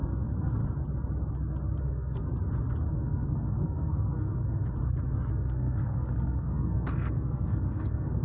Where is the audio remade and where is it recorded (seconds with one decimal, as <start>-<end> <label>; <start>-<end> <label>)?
0.0-0.6 remade; 0.6-1.8 recorded; 1.8-2.3 remade; 2.3-2.9 recorded; 2.9-4.6 remade; 4.6-5.3 recorded; 5.3-8.2 remade